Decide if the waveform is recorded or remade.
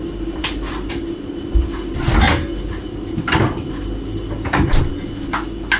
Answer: recorded